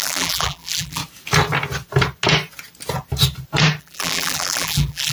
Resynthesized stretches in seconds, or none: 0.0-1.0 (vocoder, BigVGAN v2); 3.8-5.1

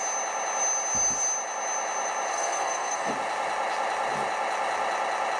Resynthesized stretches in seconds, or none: 2.3-3.1 (codec, SNAC)

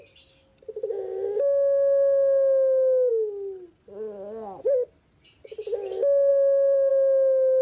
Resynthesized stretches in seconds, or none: 6.3-6.9 (autoencoder, DAC-VAE)

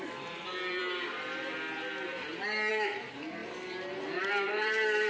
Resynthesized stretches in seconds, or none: 0.0-0.8 (vocoder, BigVGAN v2); 2.7-3.4; 4.2-5.1